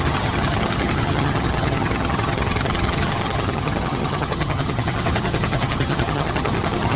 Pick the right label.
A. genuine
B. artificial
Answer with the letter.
B